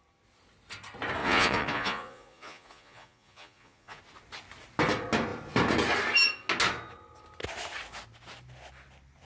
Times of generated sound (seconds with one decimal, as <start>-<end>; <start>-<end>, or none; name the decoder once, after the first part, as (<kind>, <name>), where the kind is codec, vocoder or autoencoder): 1.2-4.0 (vocoder, Vocos)